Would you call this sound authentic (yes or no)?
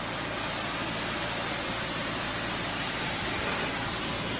yes